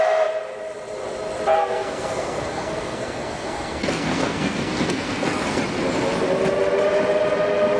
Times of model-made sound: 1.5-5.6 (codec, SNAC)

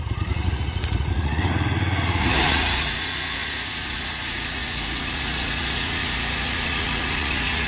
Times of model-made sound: 0.0-7.7 (vocoder, Vocos)

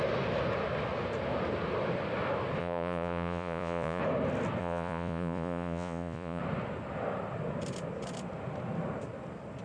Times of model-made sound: 2.6-4.0 (vocoder, Vocos); 4.6-6.4

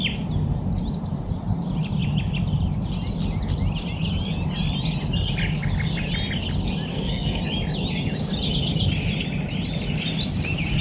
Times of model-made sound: 6.9-7.4 (codec, SNAC)

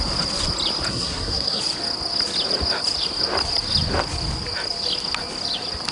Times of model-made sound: 0.9-1.6 (codec, SNAC)

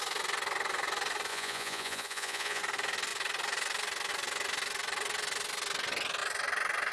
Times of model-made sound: 1.3-2.6 (vocoder, Vocos)

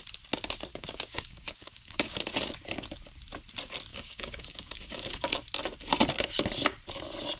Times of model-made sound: 0.7-2.2 (codec, DAC); 3.9-5.3

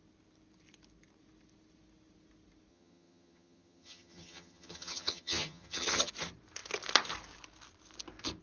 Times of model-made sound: 2.7-6.1 (vocoder, HiFi-GAN)